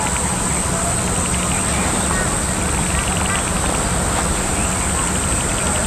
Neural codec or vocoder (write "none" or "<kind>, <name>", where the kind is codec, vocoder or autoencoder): none